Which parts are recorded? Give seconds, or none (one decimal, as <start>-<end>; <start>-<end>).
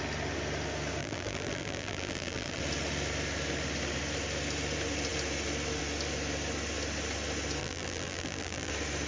0.0-1.0; 2.6-7.6; 8.7-9.1